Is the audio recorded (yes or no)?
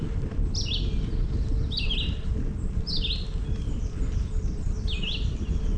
yes